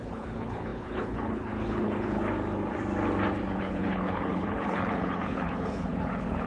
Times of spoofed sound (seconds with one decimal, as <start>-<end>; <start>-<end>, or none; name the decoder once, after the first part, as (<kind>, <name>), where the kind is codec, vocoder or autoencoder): 0.0-2.2 (codec, HILCodec); 3.6-6.5